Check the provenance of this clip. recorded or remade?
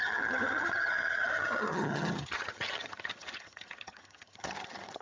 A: remade